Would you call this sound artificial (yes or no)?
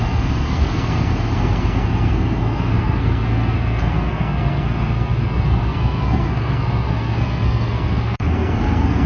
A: yes